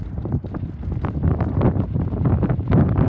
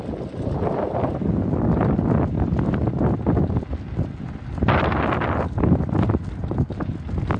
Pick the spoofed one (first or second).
first